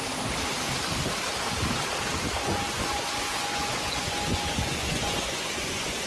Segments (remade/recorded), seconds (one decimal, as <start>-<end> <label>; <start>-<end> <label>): 0.0-2.4 recorded; 2.4-6.1 remade